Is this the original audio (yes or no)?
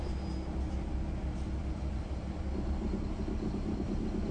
yes